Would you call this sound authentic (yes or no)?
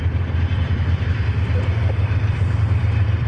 no